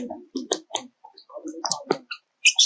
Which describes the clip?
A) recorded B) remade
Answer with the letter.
A